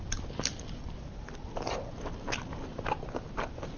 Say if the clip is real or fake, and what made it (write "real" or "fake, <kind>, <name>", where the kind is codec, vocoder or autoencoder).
real